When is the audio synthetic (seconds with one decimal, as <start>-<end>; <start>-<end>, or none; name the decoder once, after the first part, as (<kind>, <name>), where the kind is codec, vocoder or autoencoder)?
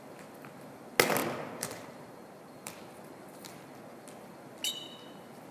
1.2-2.7 (vocoder, BigVGAN v2)